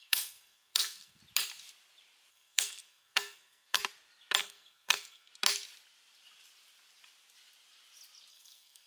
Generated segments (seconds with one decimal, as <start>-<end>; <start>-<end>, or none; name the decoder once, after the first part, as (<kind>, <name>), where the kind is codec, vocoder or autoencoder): 0.0-1.2 (codec, SNAC); 2.3-3.8; 4.4-5.3; 8.3-8.9